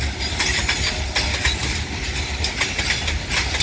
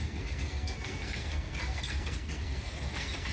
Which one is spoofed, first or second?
second